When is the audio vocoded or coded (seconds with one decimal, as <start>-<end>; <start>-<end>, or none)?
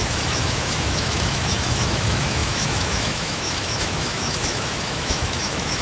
0.0-5.8